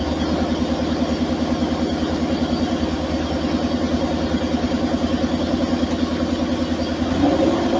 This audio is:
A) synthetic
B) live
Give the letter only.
B